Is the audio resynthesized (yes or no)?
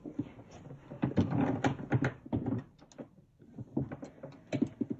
no